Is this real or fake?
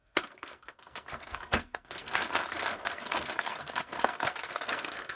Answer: fake